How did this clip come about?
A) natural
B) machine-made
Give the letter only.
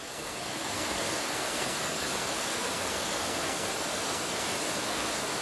B